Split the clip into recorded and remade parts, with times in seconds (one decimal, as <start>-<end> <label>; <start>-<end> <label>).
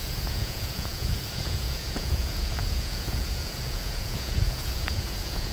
0.0-5.5 remade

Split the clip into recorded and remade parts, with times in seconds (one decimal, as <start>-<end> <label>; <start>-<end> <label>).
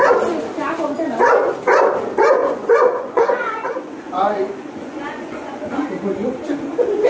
0.0-2.4 recorded; 2.4-5.9 remade; 5.9-7.1 recorded